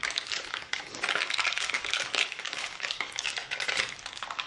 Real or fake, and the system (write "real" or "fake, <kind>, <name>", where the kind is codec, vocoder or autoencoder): fake, codec, DAC